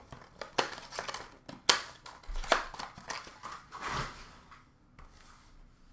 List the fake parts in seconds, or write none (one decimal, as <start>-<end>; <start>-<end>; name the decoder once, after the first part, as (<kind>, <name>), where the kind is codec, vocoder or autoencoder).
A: none